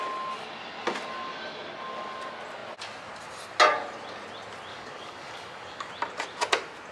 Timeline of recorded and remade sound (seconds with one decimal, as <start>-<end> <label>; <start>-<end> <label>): 0.0-4.7 recorded; 4.7-5.9 remade; 5.9-6.9 recorded